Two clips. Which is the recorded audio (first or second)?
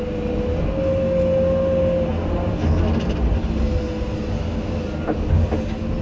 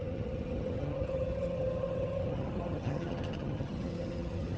first